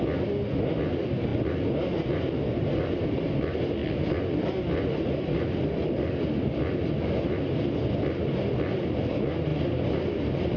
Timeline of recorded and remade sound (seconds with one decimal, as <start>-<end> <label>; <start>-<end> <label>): 0.0-1.3 recorded; 1.3-2.8 remade; 2.8-3.8 recorded; 3.8-4.6 remade; 4.6-10.6 recorded